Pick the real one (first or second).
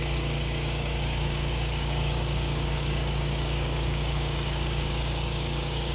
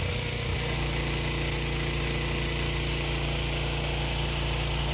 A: second